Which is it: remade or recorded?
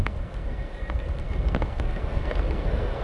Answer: remade